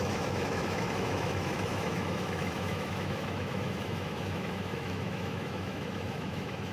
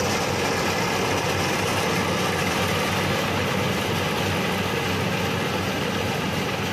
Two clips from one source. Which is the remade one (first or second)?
first